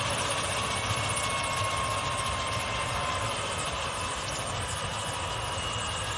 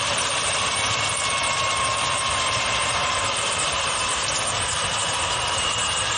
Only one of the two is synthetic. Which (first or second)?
second